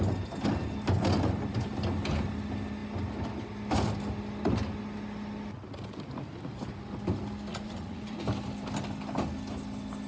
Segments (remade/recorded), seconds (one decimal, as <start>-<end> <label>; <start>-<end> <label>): 0.0-7.5 recorded; 7.5-8.2 remade; 8.2-10.1 recorded